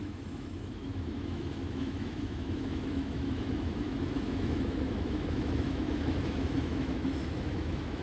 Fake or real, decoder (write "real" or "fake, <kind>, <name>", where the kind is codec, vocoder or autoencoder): fake, autoencoder, DAC-VAE